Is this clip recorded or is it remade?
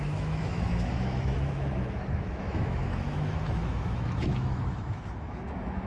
remade